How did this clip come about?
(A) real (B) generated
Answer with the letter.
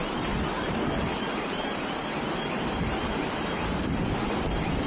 A